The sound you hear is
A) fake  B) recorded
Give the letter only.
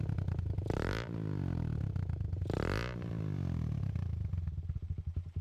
A